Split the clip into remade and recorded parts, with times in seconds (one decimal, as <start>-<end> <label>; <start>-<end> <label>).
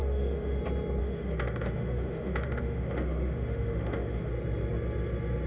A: 0.0-0.6 remade; 0.6-1.0 recorded; 1.0-4.3 remade; 4.3-5.5 recorded